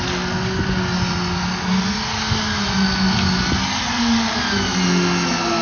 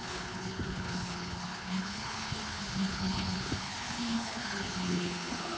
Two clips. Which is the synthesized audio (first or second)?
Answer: second